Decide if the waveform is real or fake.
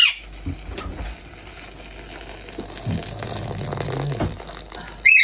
real